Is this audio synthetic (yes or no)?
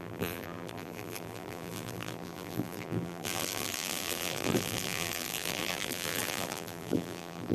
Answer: yes